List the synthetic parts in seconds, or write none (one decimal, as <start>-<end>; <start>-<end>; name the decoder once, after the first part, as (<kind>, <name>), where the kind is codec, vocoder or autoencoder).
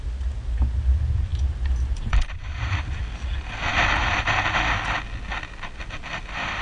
1.3-3.0 (vocoder, BigVGAN v2); 4.0-4.8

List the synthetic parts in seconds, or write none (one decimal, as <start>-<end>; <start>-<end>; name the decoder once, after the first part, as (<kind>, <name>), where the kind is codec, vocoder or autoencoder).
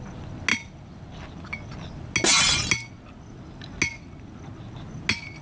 none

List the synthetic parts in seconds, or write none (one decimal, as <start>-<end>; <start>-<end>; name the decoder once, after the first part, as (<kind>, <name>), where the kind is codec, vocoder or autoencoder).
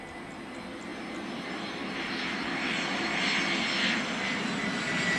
none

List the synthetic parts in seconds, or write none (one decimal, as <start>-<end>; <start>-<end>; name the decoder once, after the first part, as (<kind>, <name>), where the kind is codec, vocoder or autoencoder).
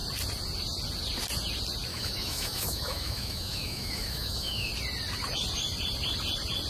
1.9-4.7 (autoencoder, DAC-VAE)